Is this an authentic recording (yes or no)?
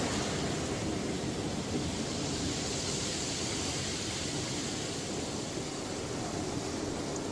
yes